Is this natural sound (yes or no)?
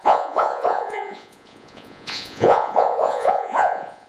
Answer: no